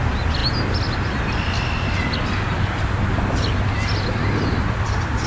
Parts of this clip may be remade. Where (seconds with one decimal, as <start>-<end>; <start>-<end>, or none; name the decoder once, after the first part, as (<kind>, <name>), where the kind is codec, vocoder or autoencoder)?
none

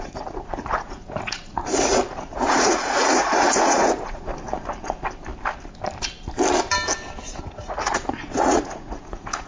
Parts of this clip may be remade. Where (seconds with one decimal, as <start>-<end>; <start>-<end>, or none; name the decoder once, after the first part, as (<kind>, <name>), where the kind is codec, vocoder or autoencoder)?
0.0-4.3 (vocoder, Vocos); 7.4-9.5

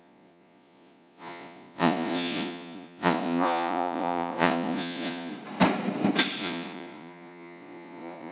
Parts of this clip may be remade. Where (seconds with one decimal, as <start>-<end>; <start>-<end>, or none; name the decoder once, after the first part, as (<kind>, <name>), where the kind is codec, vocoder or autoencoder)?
0.0-5.3 (vocoder, Vocos); 6.4-8.3